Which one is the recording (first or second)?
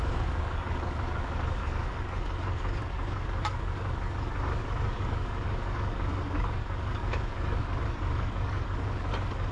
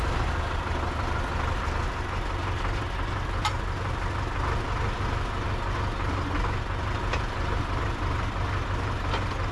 second